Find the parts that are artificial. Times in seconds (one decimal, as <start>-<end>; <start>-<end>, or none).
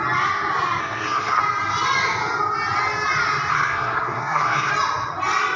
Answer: 0.8-1.4; 3.5-4.7